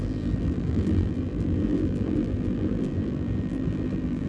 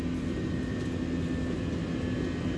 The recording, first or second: second